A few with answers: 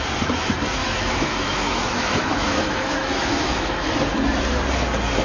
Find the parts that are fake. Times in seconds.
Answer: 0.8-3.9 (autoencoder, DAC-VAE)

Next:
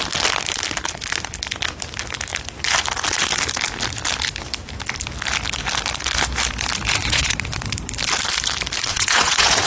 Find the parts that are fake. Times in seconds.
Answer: 7.0-7.6 (vocoder, WaveNeXt); 8.9-9.7

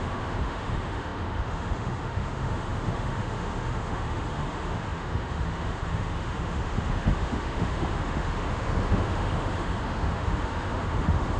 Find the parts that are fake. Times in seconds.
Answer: 0.0-11.4 (autoencoder, DAC-VAE)

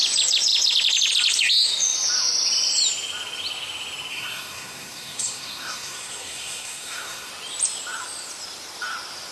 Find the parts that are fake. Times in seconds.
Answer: 4.1-7.3 (codec, SNAC)

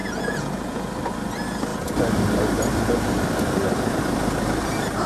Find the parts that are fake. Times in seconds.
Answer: 0.0-0.9 (vocoder, Vocos)

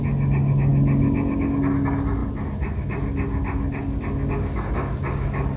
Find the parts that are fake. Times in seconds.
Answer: none